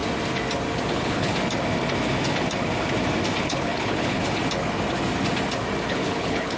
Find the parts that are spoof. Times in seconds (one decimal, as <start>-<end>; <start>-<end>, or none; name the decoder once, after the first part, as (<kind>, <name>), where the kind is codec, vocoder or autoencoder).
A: 0.9-1.3 (codec, HILCodec); 3.4-4.2; 5.9-6.6